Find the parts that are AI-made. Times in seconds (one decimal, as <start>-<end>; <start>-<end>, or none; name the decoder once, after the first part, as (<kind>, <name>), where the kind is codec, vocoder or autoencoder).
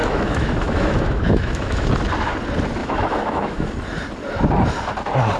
0.0-1.9 (autoencoder, DAC-VAE); 2.8-3.7